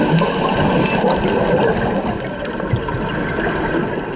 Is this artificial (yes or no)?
no